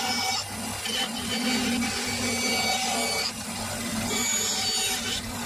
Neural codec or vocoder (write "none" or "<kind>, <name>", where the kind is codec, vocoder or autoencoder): none